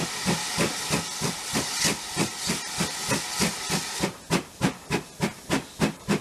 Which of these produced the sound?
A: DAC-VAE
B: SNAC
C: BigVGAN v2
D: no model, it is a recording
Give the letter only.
D